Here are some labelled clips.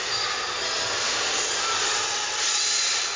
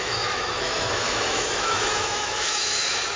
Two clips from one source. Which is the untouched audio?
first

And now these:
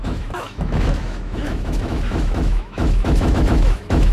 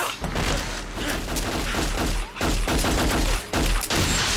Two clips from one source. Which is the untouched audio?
second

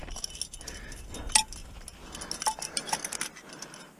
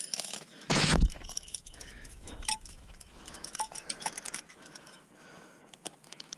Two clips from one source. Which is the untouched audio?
first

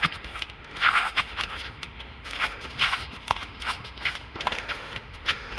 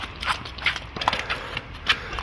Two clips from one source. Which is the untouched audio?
second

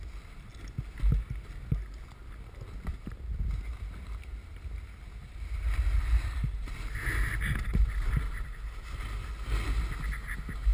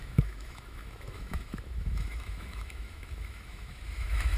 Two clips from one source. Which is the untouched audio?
first